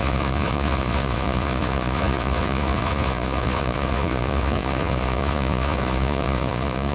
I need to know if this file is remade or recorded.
remade